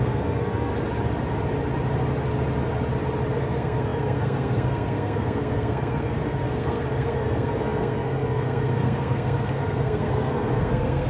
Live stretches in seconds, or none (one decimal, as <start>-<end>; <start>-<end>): 0.7-3.4